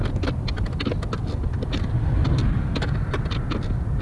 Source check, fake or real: real